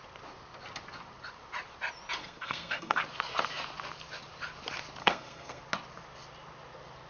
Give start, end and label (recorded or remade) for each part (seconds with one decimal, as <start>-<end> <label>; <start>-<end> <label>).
0.0-2.2 recorded; 2.2-3.0 remade; 3.0-5.0 recorded; 5.0-5.6 remade; 5.6-7.1 recorded